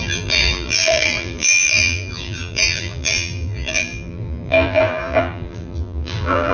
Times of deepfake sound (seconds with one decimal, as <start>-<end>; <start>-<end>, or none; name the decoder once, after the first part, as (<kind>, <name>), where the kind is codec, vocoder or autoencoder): 0.0-6.5 (vocoder, BigVGAN v2)